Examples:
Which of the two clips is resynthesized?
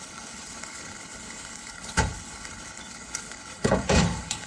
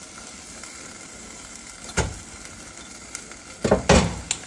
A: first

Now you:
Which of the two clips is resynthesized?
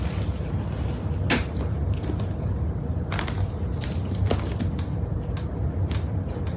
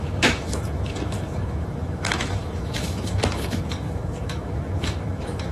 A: second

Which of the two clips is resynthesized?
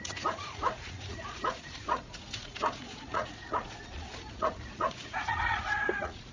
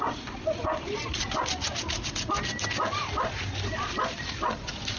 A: first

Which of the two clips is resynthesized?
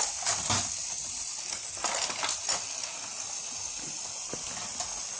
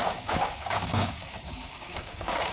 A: second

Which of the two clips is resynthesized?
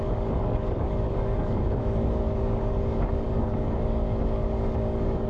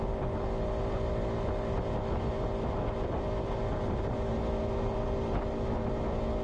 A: first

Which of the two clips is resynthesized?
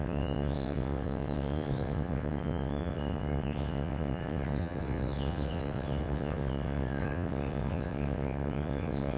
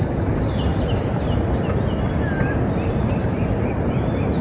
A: first